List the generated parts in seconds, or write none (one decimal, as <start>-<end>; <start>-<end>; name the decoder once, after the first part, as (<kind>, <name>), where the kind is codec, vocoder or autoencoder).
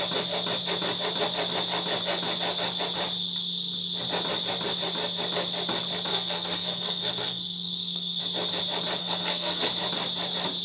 6.1-8.2 (codec, SNAC); 9.0-9.7